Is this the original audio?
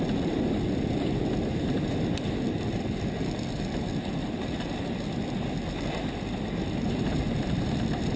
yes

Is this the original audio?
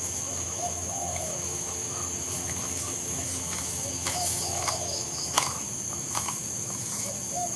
no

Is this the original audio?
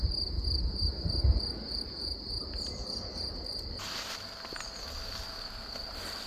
yes